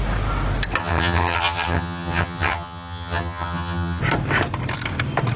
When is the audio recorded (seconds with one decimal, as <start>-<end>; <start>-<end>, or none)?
0.0-0.8; 4.0-5.4